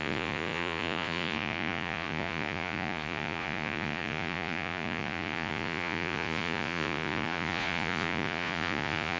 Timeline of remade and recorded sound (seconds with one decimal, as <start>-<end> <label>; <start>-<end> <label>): 0.0-9.2 remade